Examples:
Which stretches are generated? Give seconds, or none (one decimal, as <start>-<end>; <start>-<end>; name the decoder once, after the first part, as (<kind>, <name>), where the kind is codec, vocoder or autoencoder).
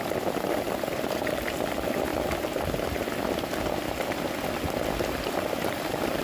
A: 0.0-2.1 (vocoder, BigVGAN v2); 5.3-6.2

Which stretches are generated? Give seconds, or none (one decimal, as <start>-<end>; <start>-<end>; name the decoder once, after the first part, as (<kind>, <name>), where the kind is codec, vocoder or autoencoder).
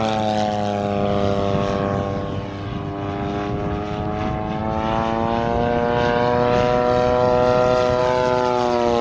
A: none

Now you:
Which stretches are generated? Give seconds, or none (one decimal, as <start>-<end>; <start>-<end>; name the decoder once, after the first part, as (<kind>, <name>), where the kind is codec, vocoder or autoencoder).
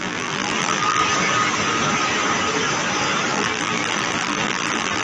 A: 0.0-1.0 (vocoder, BigVGAN v2); 3.3-5.0